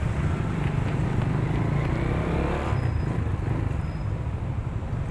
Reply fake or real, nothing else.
real